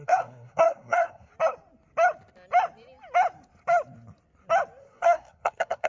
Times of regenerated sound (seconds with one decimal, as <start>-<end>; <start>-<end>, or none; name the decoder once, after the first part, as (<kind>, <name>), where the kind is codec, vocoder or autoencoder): 0.0-1.3 (codec, SNAC); 4.8-5.9